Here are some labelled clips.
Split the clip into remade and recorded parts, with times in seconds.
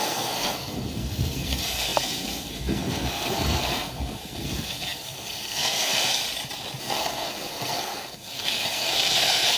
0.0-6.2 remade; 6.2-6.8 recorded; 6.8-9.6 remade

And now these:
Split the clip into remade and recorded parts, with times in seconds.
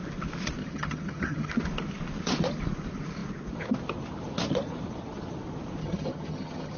0.0-0.6 recorded; 0.6-1.5 remade; 1.5-5.8 recorded; 5.8-6.8 remade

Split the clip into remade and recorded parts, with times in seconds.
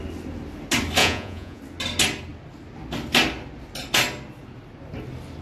0.0-1.0 recorded; 1.0-1.6 remade; 1.6-5.4 recorded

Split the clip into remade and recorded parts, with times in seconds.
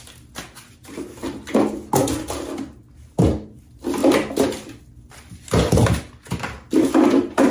0.0-7.5 recorded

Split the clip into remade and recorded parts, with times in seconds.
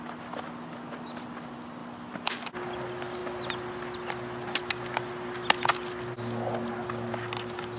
0.0-7.8 recorded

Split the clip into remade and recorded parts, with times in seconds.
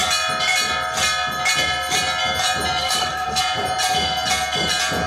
0.0-2.8 recorded; 2.8-3.4 remade; 3.4-5.1 recorded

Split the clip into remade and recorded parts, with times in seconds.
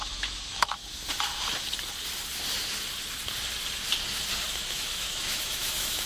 0.0-0.8 remade; 0.8-4.5 recorded; 4.5-6.1 remade